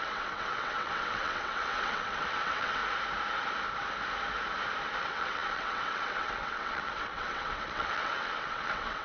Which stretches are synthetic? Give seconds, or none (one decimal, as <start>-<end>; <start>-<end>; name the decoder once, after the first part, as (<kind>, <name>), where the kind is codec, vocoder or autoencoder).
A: 0.0-2.8 (vocoder, WaveNeXt); 5.0-9.0